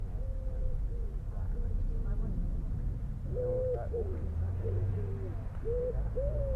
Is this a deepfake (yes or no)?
no